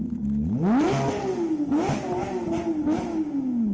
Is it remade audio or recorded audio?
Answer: recorded